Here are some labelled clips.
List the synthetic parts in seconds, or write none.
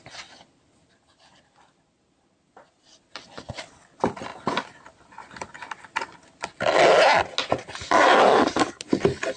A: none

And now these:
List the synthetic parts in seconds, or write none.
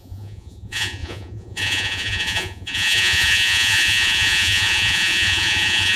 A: 0.0-6.0 (vocoder, Vocos)